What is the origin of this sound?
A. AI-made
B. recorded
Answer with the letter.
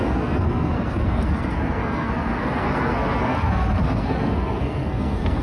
A